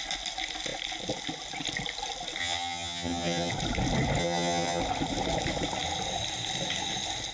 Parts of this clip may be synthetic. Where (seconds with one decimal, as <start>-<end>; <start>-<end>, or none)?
2.4-3.5; 4.2-4.8